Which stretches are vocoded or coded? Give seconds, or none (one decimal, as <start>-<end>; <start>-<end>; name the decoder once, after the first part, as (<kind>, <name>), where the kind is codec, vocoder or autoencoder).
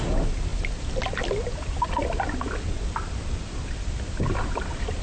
none